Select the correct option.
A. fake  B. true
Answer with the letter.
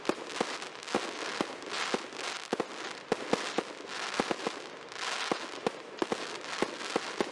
B